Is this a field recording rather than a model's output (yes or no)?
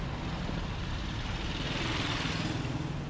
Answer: yes